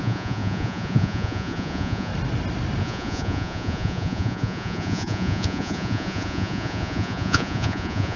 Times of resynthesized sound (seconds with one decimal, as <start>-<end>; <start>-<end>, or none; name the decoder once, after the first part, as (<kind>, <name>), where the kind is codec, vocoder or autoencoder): 0.0-2.1 (vocoder, Vocos); 2.8-8.2